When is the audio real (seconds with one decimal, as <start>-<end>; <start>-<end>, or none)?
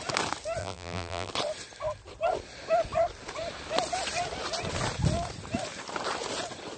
0.0-0.6; 1.3-6.8